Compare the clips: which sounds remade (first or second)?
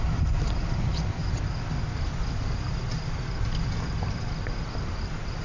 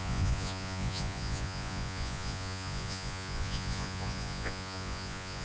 second